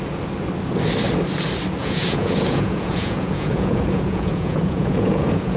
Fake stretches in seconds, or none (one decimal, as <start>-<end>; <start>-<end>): 1.8-5.6